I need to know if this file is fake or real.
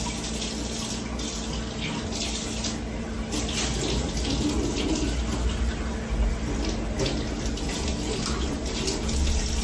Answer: real